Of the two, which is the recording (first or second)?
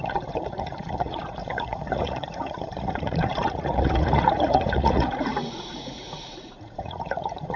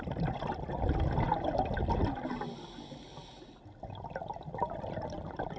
second